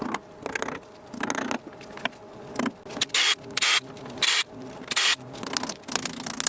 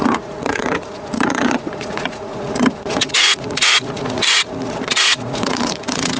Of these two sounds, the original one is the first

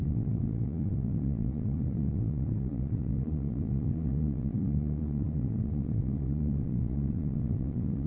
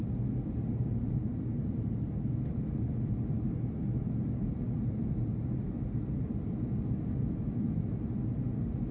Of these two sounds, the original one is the second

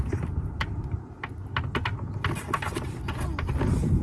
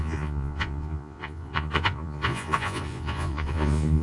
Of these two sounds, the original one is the first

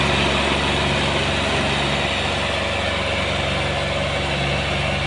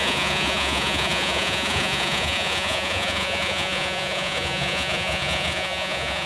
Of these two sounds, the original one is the first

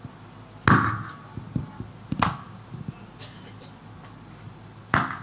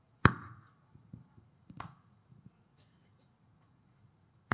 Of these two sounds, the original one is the first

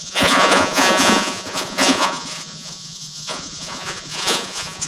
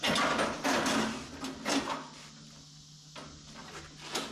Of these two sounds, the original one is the second